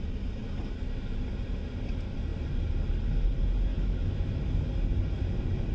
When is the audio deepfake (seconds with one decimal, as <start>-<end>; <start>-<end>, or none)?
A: 3.7-4.7